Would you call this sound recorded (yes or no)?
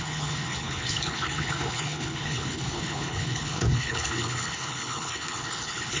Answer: no